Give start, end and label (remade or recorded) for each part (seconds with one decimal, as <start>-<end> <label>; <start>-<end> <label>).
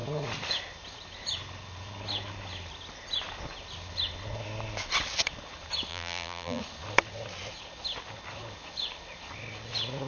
0.0-5.9 recorded; 5.9-6.6 remade; 6.6-10.1 recorded